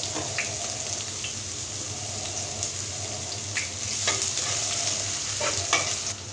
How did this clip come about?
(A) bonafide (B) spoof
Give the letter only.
A